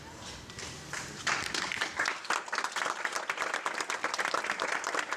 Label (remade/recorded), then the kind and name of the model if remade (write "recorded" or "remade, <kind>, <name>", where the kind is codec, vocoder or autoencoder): remade, vocoder, BigVGAN v2